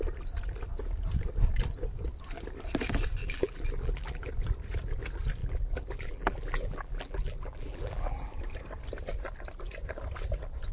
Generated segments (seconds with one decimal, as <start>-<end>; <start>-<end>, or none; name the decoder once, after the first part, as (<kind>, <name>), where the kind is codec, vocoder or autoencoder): 3.2-4.3 (vocoder, BigVGAN v2); 5.4-8.4